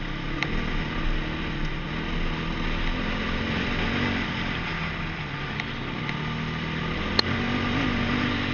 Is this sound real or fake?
real